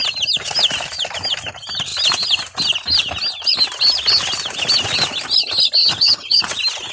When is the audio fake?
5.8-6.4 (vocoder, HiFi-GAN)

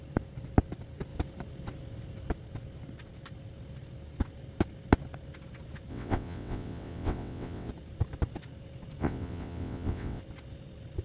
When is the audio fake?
5.9-7.7 (vocoder, WaveNeXt); 9.0-10.2

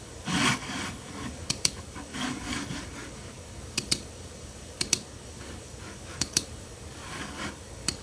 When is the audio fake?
0.0-8.0 (codec, DAC)

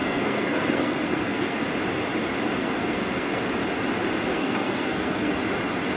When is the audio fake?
0.0-1.6 (codec, SNAC); 2.6-3.4; 4.3-5.4

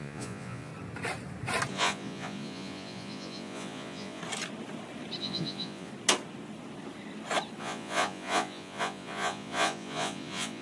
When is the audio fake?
0.0-0.7 (vocoder, Vocos); 1.7-4.2; 5.2-5.9; 7.6-10.6

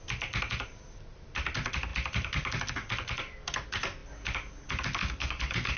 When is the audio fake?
5.0-5.8 (codec, DAC)

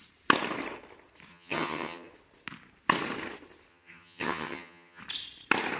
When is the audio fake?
1.3-2.1 (vocoder, HiFi-GAN); 3.7-5.0